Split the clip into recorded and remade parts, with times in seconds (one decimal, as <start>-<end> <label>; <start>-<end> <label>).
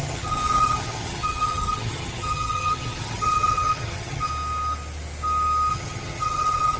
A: 0.0-4.3 remade; 4.3-5.7 recorded; 5.7-6.8 remade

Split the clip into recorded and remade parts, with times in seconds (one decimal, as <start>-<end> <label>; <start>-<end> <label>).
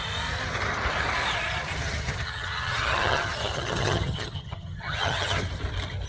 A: 0.0-1.7 recorded; 1.7-5.4 remade; 5.4-6.1 recorded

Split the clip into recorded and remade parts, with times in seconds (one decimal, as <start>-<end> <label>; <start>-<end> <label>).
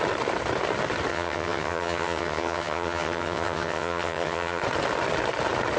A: 0.0-1.1 recorded; 1.1-4.6 remade; 4.6-5.8 recorded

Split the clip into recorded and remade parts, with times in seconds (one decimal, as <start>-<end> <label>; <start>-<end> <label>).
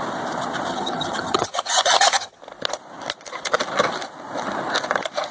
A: 0.0-0.7 recorded; 0.7-2.4 remade; 2.4-5.3 recorded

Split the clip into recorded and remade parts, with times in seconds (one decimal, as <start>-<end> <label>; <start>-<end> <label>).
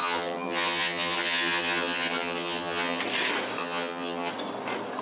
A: 0.0-3.0 remade; 3.0-3.6 recorded; 3.6-4.3 remade; 4.3-5.0 recorded